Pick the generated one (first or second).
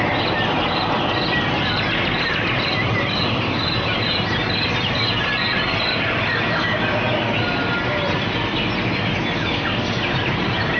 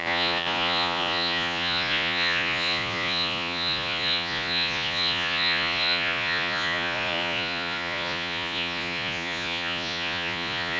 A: second